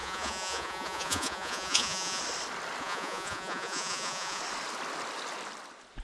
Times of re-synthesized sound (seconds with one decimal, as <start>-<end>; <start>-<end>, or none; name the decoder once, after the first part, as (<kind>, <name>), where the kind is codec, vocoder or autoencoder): 0.0-2.2 (vocoder, Vocos); 2.8-4.4